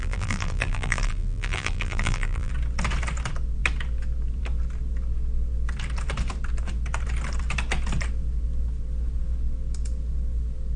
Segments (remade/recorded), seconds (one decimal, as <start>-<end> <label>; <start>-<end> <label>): 0.0-2.5 remade; 2.5-10.8 recorded